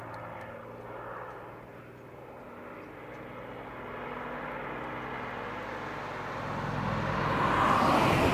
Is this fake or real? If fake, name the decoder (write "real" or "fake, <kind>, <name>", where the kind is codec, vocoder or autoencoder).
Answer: real